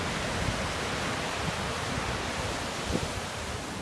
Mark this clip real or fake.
real